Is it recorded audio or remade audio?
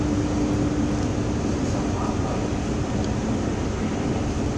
recorded